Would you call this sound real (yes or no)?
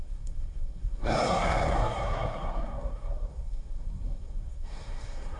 no